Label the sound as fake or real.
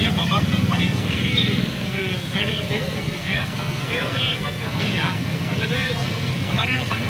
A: fake